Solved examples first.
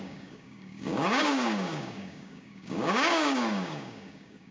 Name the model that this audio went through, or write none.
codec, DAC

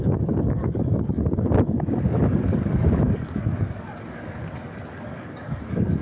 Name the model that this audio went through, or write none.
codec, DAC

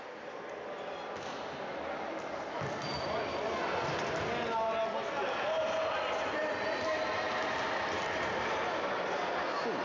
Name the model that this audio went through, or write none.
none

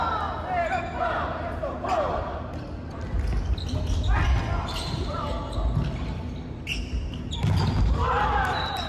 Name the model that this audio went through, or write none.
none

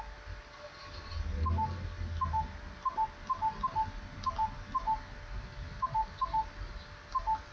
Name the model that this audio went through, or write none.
none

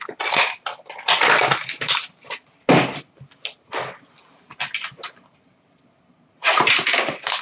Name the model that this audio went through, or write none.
none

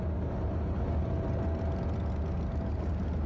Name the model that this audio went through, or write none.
none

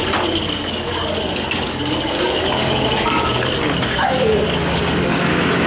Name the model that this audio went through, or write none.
codec, DAC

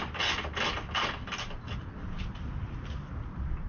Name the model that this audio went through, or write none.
none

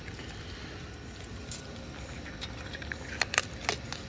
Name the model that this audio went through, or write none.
none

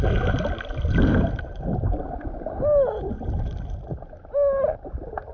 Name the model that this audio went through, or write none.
none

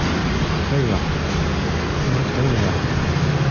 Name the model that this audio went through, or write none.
none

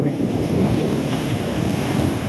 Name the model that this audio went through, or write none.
codec, DAC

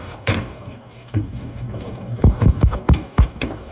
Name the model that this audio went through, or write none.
codec, DAC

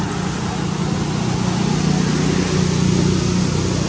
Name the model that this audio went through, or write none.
none